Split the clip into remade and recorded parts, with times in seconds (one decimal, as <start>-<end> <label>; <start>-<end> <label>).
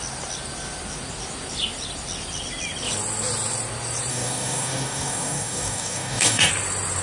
0.0-4.1 recorded; 4.1-6.5 remade; 6.5-7.0 recorded